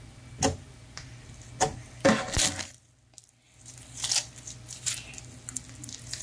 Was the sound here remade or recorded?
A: recorded